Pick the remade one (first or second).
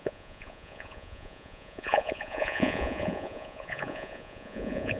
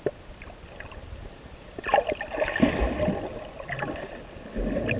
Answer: first